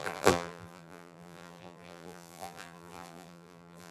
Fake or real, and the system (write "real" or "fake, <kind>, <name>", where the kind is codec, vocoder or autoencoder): fake, vocoder, BigVGAN v2